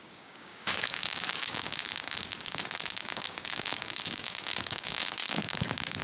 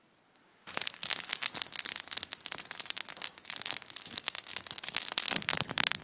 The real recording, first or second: second